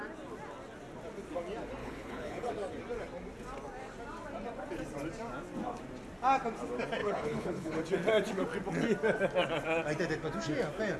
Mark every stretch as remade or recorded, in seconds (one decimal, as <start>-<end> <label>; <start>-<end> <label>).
0.0-1.8 recorded; 1.8-2.5 remade; 2.5-7.0 recorded; 7.0-7.8 remade; 7.8-11.0 recorded